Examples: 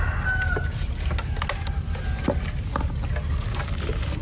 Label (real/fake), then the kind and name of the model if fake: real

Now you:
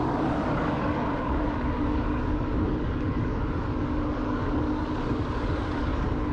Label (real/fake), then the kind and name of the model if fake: fake, codec, DAC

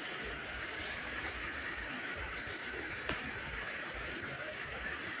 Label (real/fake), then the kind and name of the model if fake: fake, codec, DAC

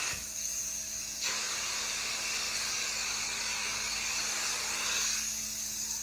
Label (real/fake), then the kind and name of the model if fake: fake, codec, DAC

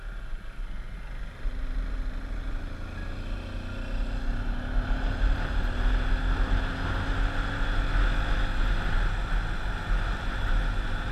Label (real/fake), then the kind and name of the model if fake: real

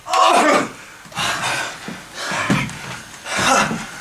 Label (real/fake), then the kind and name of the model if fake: real